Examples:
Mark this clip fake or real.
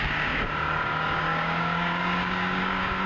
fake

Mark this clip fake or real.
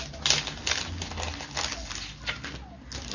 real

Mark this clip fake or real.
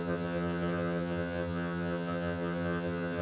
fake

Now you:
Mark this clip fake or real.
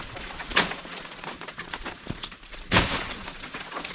fake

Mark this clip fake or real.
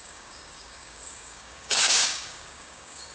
fake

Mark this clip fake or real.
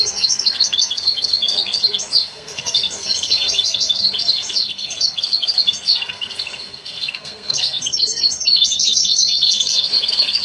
fake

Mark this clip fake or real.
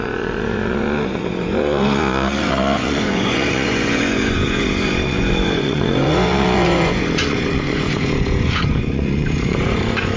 fake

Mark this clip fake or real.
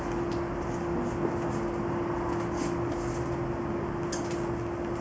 real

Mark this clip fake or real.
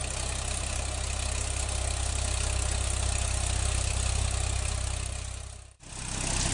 real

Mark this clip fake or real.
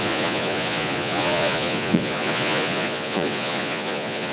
fake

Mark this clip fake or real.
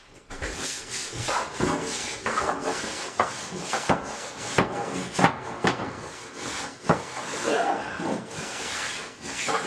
fake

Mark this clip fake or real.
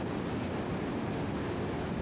real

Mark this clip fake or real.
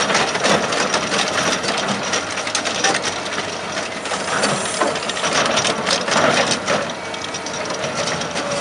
real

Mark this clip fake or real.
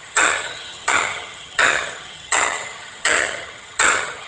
fake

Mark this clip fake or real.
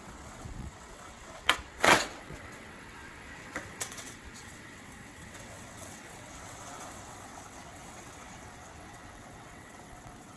fake